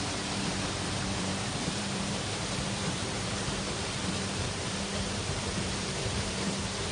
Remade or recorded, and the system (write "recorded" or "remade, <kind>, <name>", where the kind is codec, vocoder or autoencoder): remade, vocoder, BigVGAN v2